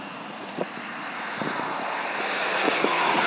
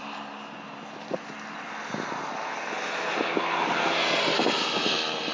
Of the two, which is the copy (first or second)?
first